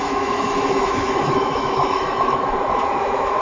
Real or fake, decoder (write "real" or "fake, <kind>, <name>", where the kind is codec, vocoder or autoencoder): fake, autoencoder, DAC-VAE